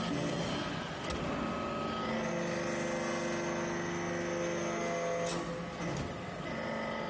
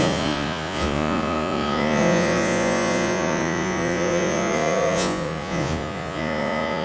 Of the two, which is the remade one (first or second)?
second